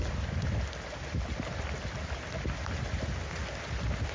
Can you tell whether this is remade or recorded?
recorded